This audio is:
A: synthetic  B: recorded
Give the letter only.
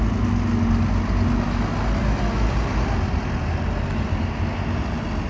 B